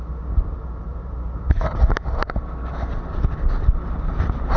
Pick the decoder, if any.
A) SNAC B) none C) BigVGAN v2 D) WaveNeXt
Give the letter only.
B